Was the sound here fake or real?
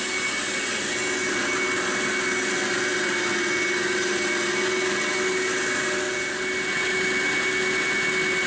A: real